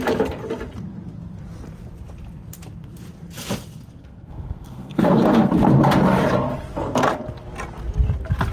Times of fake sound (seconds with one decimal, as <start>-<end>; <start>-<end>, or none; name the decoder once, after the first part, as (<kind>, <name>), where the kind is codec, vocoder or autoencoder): 4.0-5.5 (codec, SNAC)